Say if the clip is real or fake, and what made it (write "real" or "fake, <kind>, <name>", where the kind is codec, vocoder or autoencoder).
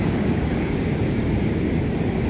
fake, codec, DAC